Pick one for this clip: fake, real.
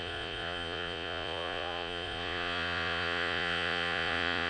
fake